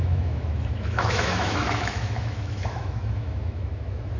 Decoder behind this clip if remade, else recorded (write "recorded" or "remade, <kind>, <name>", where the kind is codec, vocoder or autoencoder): remade, autoencoder, DAC-VAE